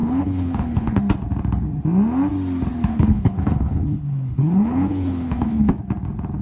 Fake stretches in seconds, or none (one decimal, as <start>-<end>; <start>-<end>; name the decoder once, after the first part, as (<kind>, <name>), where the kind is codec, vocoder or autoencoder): 0.0-1.0 (codec, HILCodec); 2.9-5.7

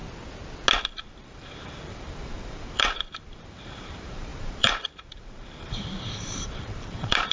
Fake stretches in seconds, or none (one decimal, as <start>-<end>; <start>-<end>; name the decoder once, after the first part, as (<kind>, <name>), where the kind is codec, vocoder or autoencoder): 0.8-7.3 (vocoder, BigVGAN v2)

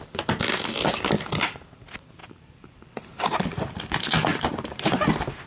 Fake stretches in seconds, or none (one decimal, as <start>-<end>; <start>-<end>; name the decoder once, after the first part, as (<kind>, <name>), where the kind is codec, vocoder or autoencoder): 2.2-3.8 (vocoder, BigVGAN v2); 4.3-5.0

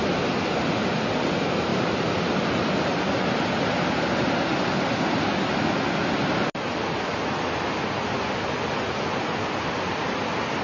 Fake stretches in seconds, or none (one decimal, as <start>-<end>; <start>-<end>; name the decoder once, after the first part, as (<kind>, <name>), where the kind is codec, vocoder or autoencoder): none

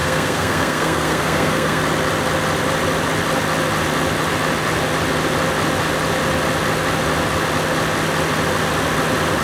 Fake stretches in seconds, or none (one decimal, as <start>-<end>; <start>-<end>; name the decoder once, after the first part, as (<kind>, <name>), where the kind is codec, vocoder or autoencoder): 0.0-1.8 (codec, SNAC)

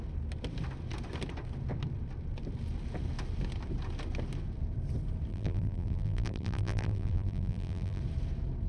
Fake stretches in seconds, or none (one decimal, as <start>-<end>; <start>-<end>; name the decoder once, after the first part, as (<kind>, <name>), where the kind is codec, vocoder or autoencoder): 5.3-8.0 (vocoder, BigVGAN v2)